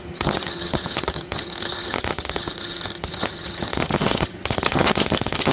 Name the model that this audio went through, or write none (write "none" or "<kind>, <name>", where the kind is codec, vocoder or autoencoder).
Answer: vocoder, HiFi-GAN